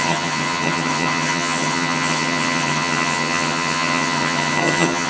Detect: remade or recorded remade